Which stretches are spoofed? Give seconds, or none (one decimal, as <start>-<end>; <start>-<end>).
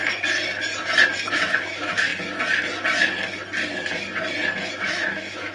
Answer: 1.3-2.1; 4.7-5.5